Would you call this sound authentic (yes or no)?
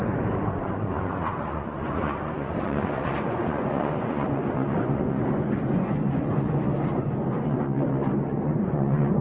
no